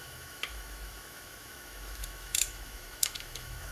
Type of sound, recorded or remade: remade